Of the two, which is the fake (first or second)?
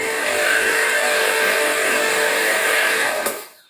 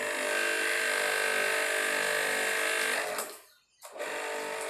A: first